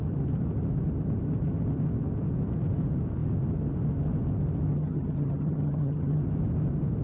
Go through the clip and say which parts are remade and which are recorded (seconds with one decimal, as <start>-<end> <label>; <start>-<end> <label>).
0.0-4.7 recorded; 4.7-6.2 remade; 6.2-7.0 recorded